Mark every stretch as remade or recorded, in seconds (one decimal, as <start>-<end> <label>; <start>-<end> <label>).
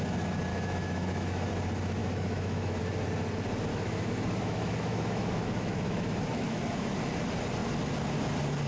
0.0-0.5 recorded; 0.5-1.5 remade; 1.5-2.0 recorded; 2.0-2.8 remade; 2.8-3.7 recorded; 3.7-6.7 remade; 6.7-8.7 recorded